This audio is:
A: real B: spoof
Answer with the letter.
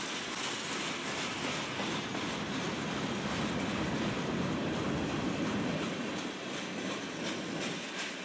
A